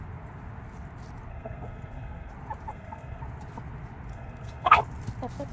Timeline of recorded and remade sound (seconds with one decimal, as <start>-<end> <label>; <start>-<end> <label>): 0.0-1.3 recorded; 1.3-2.3 remade; 2.3-2.7 recorded; 2.7-3.2 remade; 3.2-4.1 recorded; 4.1-4.8 remade; 4.8-5.5 recorded